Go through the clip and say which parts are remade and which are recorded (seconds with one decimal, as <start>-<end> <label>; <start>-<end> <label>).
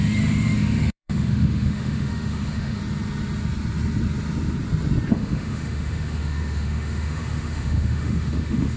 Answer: 0.0-2.8 remade; 2.8-5.1 recorded; 5.1-8.8 remade